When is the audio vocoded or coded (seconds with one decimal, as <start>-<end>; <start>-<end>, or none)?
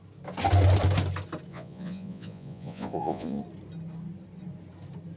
1.5-3.4